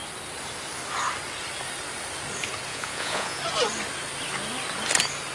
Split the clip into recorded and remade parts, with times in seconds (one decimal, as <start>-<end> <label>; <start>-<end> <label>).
0.0-2.7 recorded; 2.7-3.4 remade; 3.4-5.3 recorded